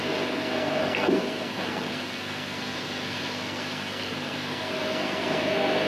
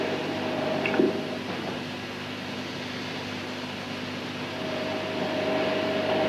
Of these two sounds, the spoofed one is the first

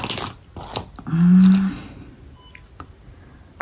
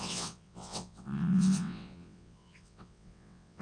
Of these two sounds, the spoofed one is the second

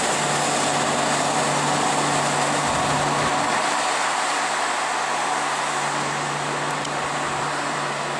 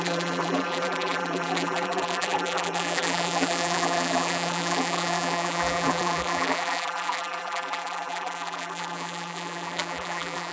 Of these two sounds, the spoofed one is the second